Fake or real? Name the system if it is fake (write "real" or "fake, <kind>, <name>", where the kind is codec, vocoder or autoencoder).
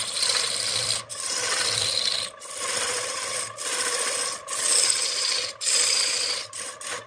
real